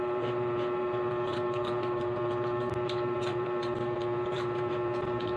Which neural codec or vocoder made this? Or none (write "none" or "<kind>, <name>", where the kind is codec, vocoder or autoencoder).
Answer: vocoder, BigVGAN v2